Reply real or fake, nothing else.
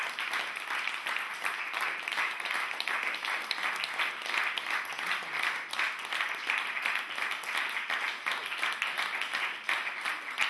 real